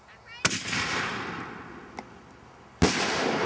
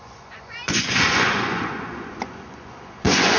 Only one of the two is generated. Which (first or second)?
second